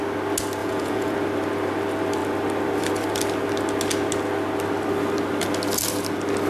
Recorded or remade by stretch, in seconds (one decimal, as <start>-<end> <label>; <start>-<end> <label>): 0.0-0.6 recorded; 0.6-1.1 remade; 1.1-6.5 recorded